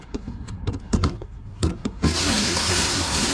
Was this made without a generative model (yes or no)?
no